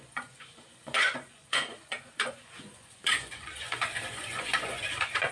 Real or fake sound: fake